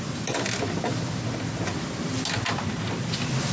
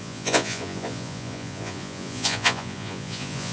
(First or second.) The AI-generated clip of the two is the second